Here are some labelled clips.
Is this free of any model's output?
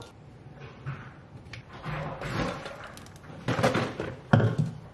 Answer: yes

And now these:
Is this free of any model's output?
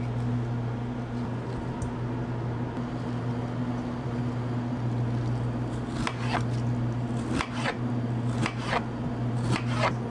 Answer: yes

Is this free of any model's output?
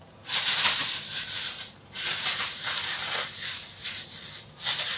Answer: no